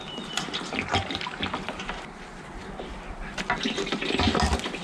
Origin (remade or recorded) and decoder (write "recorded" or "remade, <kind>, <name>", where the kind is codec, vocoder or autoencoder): recorded